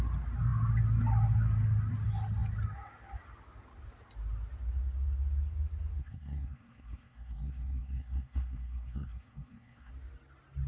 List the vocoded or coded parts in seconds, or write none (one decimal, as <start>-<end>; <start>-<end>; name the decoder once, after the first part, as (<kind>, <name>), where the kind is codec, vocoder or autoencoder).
6.0-9.9 (codec, SNAC)